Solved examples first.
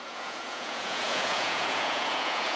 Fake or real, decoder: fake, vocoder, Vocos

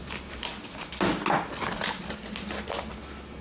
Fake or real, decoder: real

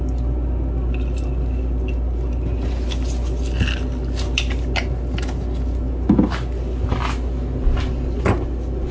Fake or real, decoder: real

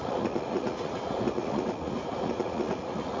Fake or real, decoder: fake, vocoder, Vocos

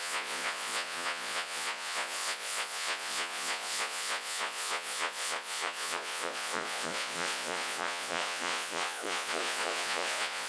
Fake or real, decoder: fake, vocoder, Vocos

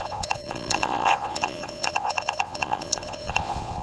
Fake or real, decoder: fake, vocoder, Vocos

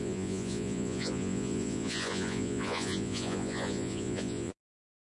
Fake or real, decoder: fake, vocoder, Vocos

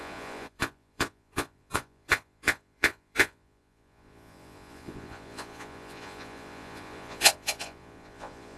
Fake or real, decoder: fake, vocoder, Vocos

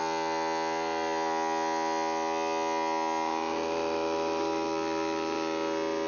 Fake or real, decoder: real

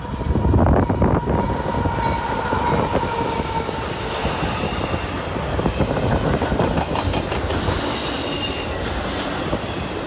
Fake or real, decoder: real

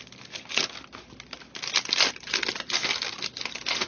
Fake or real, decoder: real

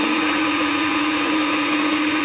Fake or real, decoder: fake, vocoder, Vocos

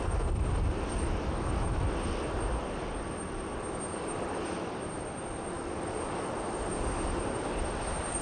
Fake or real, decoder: real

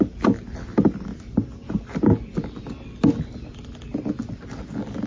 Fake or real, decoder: real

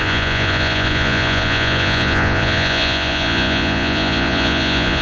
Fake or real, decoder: fake, vocoder, Vocos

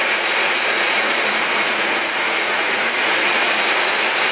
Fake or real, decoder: fake, vocoder, Vocos